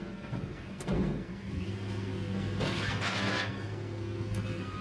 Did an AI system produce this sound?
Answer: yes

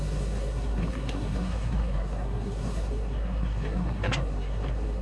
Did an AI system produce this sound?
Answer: yes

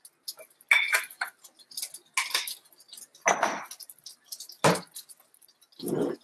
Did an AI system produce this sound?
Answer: no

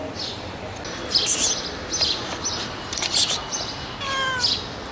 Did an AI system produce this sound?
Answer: no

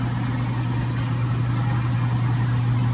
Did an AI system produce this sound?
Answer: no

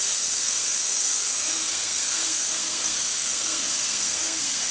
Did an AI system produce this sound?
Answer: yes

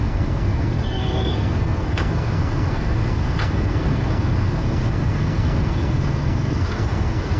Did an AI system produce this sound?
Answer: yes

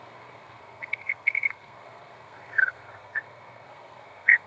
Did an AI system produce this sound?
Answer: yes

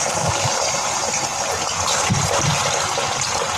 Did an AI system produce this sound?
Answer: no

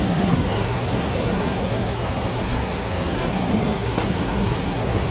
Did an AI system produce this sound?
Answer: yes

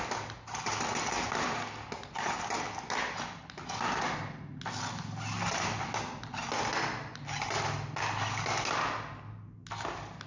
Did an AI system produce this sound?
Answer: no